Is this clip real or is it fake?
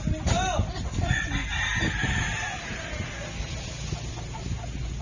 real